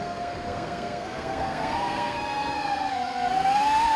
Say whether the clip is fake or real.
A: fake